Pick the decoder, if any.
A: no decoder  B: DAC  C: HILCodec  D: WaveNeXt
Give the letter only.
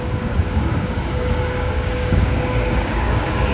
B